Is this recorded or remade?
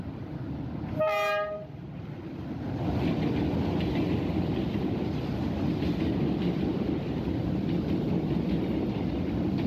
recorded